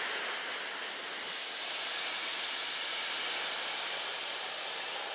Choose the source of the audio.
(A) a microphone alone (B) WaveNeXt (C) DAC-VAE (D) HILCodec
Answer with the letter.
A